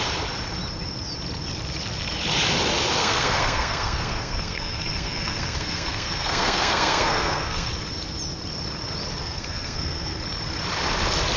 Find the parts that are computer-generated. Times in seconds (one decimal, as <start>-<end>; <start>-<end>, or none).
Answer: 3.0-7.7; 9.2-10.2